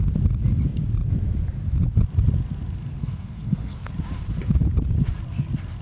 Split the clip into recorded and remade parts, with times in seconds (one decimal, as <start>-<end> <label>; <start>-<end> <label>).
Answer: 0.0-2.9 recorded; 2.9-3.9 remade; 3.9-5.8 recorded